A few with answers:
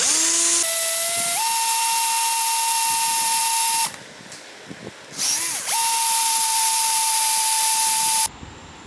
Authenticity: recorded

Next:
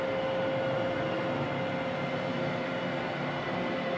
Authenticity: recorded